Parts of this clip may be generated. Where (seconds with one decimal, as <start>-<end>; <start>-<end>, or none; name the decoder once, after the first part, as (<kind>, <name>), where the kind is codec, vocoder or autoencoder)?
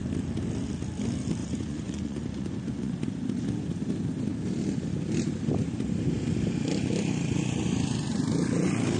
1.4-3.0 (vocoder, Vocos)